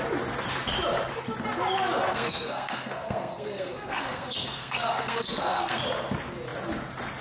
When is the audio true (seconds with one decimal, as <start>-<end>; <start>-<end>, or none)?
0.0-2.1; 5.8-7.2